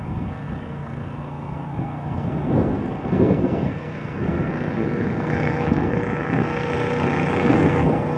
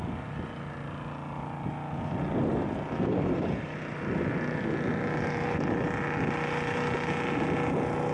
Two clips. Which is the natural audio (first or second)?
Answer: second